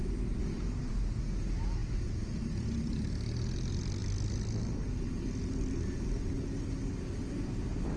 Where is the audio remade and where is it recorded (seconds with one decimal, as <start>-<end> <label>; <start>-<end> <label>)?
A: 0.0-8.0 recorded